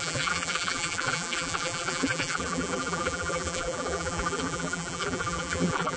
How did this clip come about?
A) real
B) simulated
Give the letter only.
B